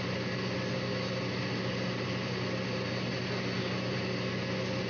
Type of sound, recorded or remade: recorded